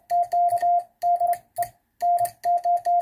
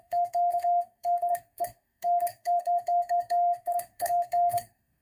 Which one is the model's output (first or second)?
second